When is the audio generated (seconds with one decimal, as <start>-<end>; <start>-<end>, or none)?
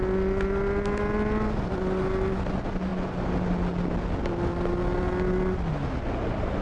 none